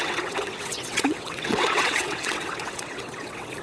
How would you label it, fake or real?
fake